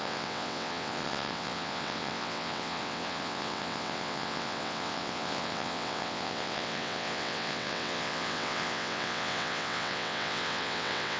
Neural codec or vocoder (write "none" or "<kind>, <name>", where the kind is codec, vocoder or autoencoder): vocoder, WaveNeXt